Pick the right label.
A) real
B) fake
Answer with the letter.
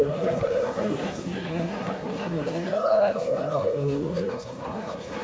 B